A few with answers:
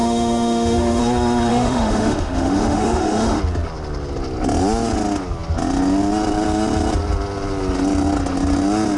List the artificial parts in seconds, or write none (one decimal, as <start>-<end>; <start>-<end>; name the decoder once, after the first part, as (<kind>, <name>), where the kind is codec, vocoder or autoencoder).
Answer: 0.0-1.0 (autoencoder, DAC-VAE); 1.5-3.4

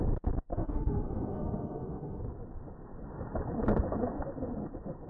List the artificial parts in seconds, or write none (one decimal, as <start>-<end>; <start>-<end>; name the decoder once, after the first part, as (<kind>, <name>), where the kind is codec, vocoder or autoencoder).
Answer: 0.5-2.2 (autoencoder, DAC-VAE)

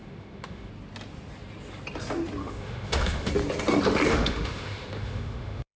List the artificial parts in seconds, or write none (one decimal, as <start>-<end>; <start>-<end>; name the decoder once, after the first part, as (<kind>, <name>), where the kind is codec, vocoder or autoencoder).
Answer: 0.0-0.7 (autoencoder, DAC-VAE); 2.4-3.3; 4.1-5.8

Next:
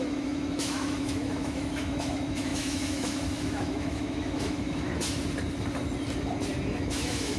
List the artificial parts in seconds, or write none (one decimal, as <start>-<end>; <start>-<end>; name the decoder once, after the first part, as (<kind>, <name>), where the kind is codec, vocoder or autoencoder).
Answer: 0.0-4.9 (autoencoder, DAC-VAE); 6.7-7.4

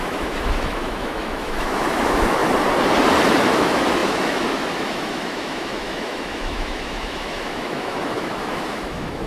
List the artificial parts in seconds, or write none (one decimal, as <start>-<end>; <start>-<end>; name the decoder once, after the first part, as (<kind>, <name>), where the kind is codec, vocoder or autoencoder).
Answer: 0.0-2.4 (autoencoder, DAC-VAE); 3.4-9.3

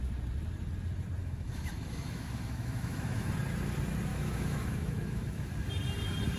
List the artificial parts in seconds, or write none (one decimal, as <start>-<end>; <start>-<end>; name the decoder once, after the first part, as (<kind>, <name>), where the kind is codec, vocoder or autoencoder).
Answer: 1.2-3.3 (autoencoder, DAC-VAE); 4.1-5.5